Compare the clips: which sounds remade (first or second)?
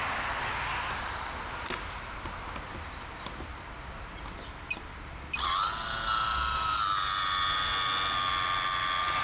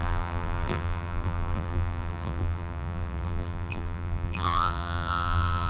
second